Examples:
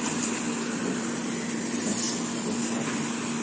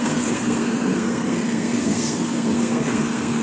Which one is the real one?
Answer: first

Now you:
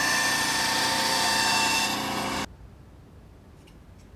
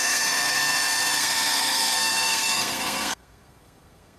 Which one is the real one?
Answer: first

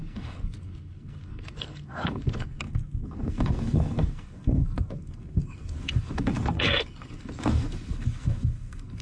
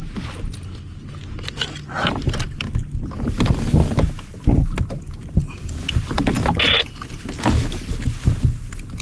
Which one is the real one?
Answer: second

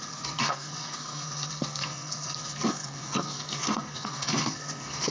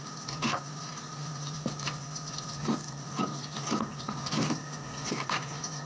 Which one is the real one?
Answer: second